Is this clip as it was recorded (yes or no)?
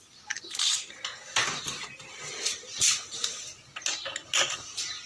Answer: yes